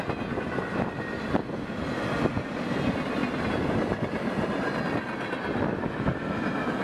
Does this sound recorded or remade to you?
recorded